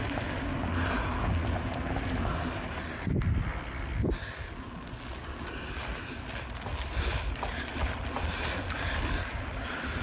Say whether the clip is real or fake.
real